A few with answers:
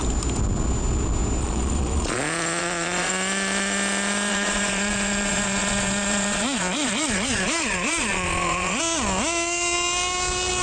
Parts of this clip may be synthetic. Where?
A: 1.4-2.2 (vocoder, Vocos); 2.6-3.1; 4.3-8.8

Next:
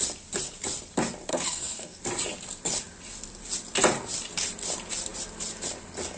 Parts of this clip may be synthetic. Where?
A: 1.3-2.0 (codec, SNAC)

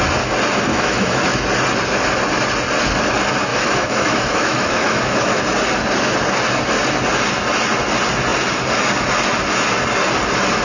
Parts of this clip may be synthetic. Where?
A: 0.7-1.4 (autoencoder, DAC-VAE); 3.5-5.4

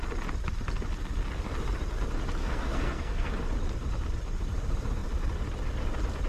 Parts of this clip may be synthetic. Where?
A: 2.4-3.3 (codec, SNAC)

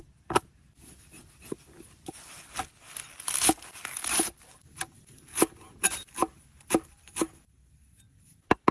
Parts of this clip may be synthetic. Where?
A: none

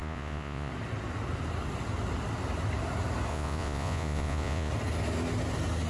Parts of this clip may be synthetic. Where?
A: 0.0-0.7 (vocoder, Vocos); 3.3-4.7

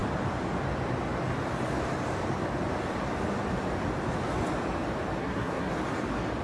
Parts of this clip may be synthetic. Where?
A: 5.2-5.7 (codec, SNAC)

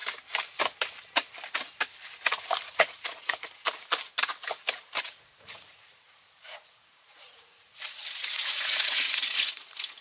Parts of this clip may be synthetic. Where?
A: 2.7-3.6 (vocoder, Vocos); 5.0-10.0